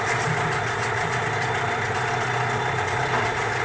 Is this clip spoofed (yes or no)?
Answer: no